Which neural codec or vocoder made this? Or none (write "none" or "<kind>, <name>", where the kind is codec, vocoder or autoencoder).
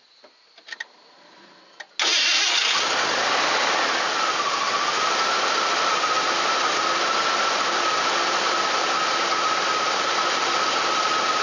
none